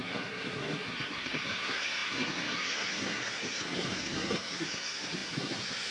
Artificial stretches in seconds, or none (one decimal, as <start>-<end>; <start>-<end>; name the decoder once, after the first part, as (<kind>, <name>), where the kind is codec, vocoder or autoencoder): 0.0-5.9 (codec, SNAC)

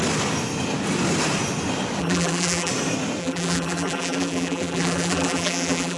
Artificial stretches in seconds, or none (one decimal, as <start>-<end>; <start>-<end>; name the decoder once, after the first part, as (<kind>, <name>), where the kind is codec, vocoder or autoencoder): 2.0-2.7 (vocoder, BigVGAN v2); 3.2-6.0

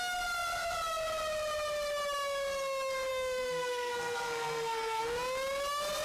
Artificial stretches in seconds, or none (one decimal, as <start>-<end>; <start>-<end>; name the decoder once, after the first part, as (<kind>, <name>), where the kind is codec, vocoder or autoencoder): 3.1-5.0 (codec, SNAC)

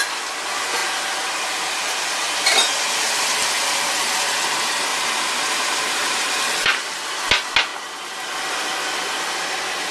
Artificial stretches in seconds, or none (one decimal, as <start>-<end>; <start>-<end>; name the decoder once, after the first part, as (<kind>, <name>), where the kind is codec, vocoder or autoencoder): 0.8-2.4 (vocoder, BigVGAN v2); 4.9-7.2

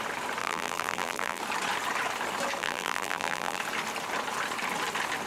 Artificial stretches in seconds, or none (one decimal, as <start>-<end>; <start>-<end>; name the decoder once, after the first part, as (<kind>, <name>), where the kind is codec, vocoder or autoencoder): 0.4-1.4 (vocoder, BigVGAN v2); 2.6-3.6